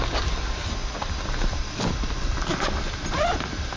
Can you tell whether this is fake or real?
real